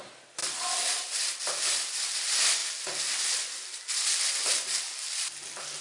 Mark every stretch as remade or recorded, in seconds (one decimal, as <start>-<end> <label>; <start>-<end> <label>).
0.0-5.8 recorded